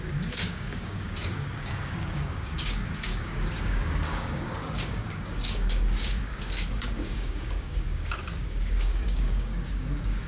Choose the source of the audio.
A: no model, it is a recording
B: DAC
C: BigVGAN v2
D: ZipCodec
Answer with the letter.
B